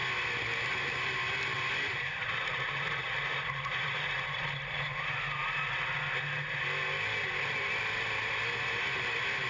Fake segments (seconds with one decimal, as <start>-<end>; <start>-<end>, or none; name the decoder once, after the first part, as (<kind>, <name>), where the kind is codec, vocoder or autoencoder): none